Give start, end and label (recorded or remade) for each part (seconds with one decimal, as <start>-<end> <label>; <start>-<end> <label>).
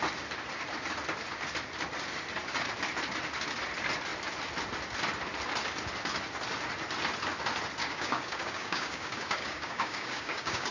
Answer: 0.0-7.8 recorded; 7.8-10.7 remade